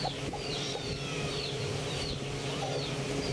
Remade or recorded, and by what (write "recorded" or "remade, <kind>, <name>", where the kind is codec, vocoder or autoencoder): remade, vocoder, BigVGAN v2